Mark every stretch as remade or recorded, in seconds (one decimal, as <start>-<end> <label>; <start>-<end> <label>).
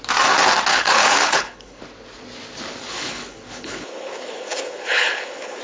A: 0.0-0.7 recorded; 0.7-1.8 remade; 1.8-2.8 recorded; 2.8-5.6 remade